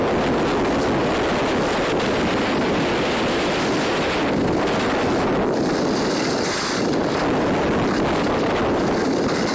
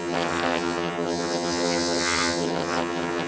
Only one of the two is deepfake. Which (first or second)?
second